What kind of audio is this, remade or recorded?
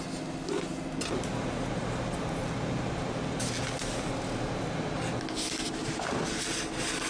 recorded